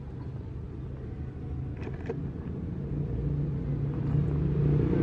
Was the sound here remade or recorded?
recorded